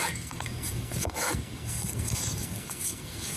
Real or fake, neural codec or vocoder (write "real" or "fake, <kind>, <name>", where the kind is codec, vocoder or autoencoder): fake, codec, SNAC